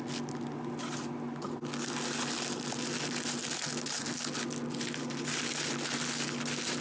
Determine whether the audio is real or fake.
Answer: real